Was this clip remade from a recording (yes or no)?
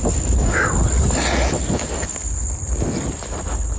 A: no